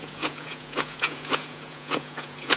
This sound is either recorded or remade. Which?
remade